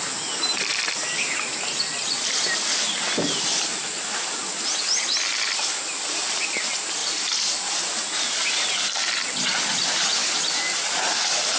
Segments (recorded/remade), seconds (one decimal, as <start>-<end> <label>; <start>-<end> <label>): 0.0-1.9 recorded; 1.9-2.4 remade; 2.4-7.0 recorded; 7.0-7.7 remade; 7.7-11.6 recorded